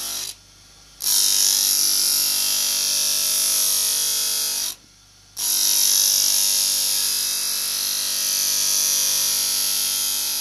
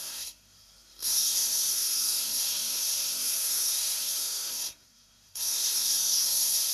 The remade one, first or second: second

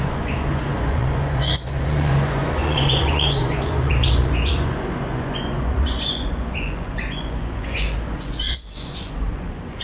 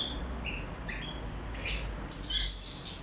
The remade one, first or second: first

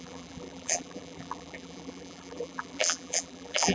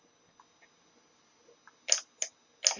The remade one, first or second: first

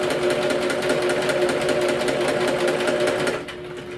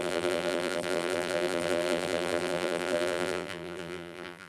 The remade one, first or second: second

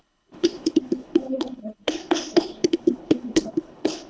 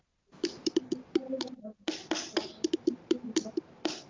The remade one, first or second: first